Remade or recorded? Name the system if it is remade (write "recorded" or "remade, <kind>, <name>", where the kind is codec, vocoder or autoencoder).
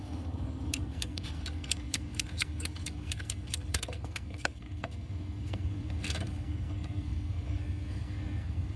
remade, codec, SNAC